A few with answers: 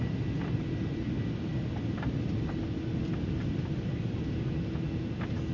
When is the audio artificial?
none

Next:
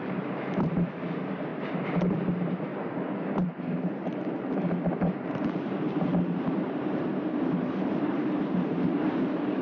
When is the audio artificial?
0.0-2.7 (vocoder, BigVGAN v2); 3.5-9.6